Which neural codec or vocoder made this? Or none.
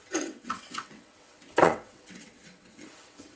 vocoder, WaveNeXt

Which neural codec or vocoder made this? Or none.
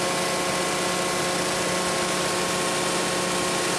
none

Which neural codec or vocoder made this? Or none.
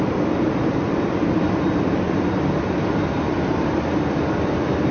vocoder, BigVGAN v2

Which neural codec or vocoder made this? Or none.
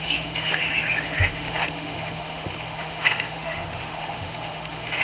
autoencoder, DAC-VAE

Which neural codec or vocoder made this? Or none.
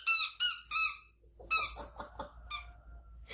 none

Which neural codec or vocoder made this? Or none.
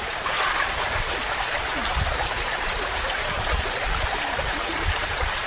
vocoder, BigVGAN v2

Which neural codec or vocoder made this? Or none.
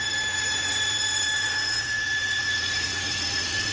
vocoder, Vocos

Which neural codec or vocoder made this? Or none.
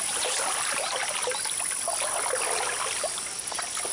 none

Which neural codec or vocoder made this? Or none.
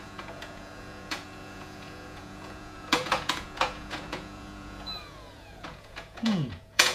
vocoder, Vocos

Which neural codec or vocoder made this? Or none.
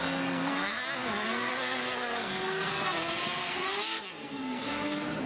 codec, SNAC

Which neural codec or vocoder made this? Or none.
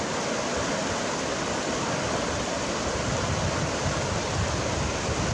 none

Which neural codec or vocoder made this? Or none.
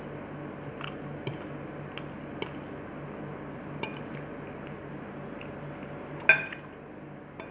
none